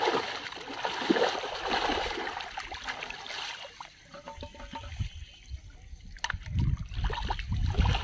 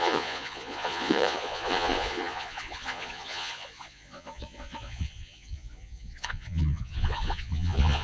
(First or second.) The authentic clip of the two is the first